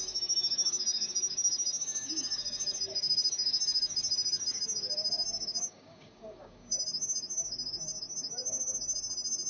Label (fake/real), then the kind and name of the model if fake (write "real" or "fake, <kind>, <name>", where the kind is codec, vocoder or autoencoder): fake, codec, DAC